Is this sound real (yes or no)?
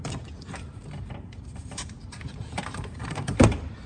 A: no